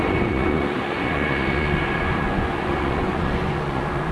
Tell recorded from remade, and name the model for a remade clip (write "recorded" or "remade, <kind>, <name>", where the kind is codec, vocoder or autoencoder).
remade, vocoder, Vocos